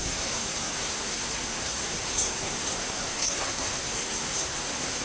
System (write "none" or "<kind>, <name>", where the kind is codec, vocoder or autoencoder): codec, SNAC